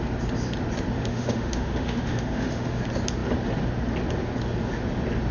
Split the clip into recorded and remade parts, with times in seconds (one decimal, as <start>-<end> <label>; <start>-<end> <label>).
0.0-1.0 recorded; 1.0-2.8 remade; 2.8-5.3 recorded